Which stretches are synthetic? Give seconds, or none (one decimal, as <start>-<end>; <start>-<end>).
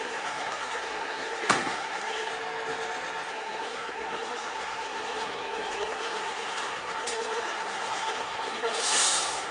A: 0.0-2.3; 3.3-9.5